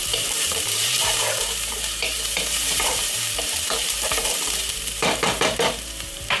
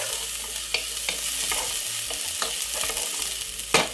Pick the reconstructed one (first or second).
first